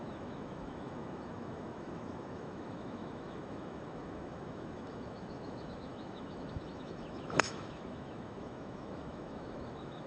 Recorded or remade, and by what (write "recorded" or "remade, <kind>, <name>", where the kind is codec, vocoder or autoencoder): remade, autoencoder, DAC-VAE